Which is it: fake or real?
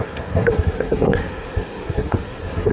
fake